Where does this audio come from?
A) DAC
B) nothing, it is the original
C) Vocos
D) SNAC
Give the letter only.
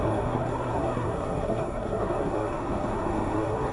D